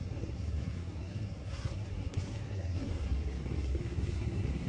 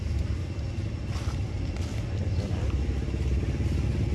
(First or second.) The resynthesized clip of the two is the first